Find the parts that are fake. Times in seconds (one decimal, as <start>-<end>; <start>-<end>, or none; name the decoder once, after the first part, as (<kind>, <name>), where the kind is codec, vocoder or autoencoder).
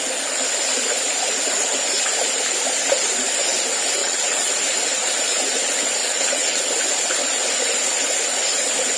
4.0-4.5 (vocoder, WaveNeXt); 6.0-6.6